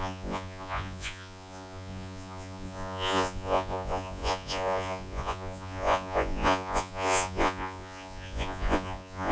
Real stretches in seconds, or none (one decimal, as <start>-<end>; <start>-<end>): none